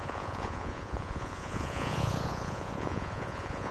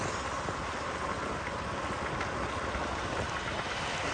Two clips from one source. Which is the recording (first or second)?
second